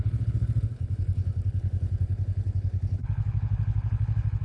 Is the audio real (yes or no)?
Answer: no